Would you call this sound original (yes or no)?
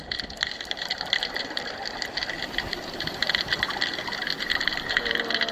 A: yes